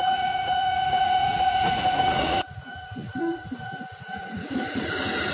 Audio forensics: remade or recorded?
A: remade